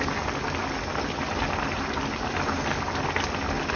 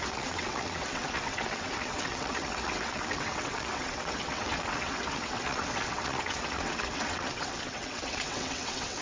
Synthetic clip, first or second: second